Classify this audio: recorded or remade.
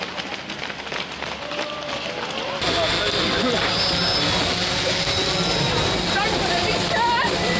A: recorded